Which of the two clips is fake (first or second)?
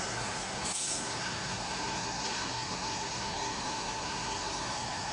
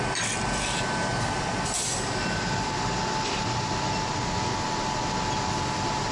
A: first